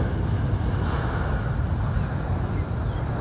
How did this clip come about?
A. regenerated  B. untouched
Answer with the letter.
B